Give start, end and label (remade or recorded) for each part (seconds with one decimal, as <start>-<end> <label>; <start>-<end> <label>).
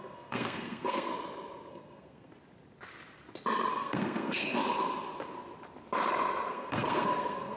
0.0-1.1 remade; 1.1-1.7 recorded; 1.7-2.3 remade; 2.3-3.7 recorded; 3.7-4.6 remade; 4.6-6.5 recorded; 6.5-7.6 remade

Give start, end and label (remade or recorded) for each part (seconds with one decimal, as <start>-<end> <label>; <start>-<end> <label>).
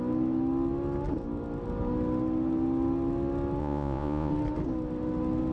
0.0-3.6 recorded; 3.6-4.3 remade; 4.3-5.5 recorded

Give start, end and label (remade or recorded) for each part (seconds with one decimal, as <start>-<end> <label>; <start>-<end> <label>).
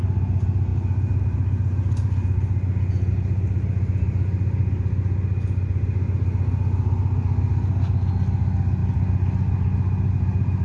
0.0-10.6 recorded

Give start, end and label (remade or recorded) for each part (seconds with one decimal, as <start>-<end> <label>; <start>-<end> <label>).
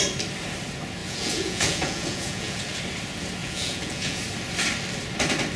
0.0-1.0 recorded; 1.0-2.8 remade; 2.8-3.4 recorded; 3.4-4.2 remade; 4.2-5.6 recorded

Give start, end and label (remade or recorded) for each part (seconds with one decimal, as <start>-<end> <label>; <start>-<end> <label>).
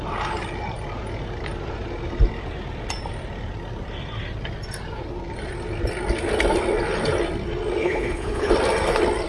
0.0-7.8 recorded; 7.8-8.5 remade; 8.5-9.3 recorded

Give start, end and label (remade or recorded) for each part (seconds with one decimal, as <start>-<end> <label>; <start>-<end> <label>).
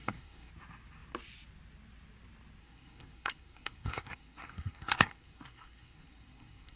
0.0-0.5 remade; 0.5-2.6 recorded; 2.6-6.8 remade